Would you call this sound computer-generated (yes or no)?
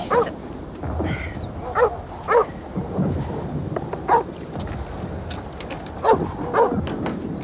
no